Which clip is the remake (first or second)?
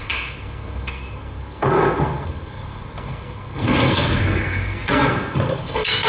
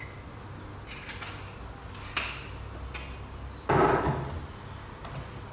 first